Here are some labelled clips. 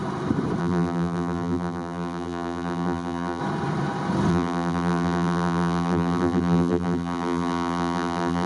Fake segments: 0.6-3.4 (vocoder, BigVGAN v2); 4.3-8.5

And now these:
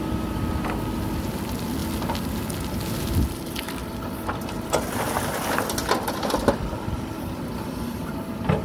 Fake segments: none

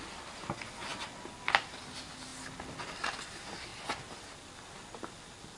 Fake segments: none

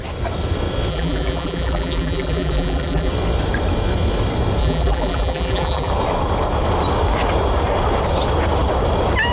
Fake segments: 0.9-3.1 (vocoder, BigVGAN v2); 4.6-5.9

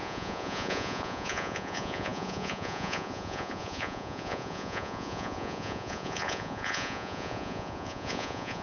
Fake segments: 0.0-8.6 (vocoder, Vocos)

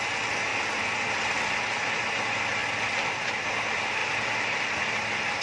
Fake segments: 0.0-0.5 (vocoder, BigVGAN v2); 1.1-5.4

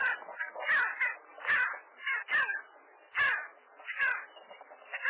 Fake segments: none

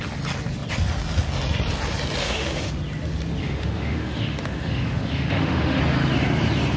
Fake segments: 2.2-2.7 (autoencoder, DAC-VAE); 3.4-5.8